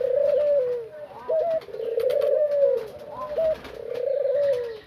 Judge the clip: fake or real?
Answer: real